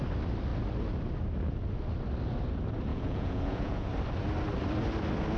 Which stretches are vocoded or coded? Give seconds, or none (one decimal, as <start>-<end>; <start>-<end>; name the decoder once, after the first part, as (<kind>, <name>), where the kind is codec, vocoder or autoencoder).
2.9-3.9 (vocoder, Vocos)